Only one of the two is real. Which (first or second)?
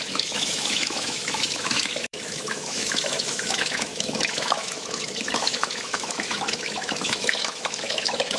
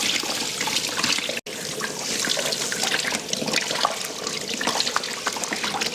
second